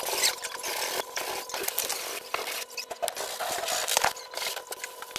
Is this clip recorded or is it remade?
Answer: recorded